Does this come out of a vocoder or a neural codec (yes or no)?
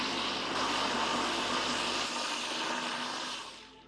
no